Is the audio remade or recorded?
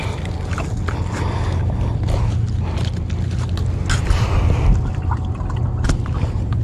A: recorded